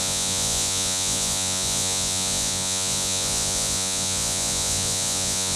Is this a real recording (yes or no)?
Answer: no